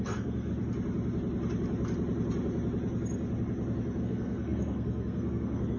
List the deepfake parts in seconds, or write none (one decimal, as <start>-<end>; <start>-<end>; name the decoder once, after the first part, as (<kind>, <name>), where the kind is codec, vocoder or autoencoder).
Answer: 0.0-0.5 (codec, SNAC); 4.0-5.8

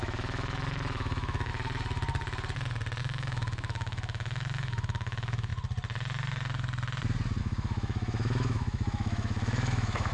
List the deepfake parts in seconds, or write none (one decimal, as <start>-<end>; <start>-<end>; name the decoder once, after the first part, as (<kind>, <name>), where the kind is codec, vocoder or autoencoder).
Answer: 0.0-1.5 (autoencoder, DAC-VAE); 3.0-5.5; 7.4-10.1

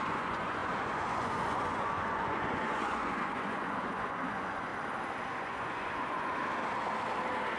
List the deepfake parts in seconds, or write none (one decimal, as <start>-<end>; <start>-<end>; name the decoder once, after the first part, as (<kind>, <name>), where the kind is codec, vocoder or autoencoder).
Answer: 0.0-4.7 (vocoder, Vocos); 5.4-6.4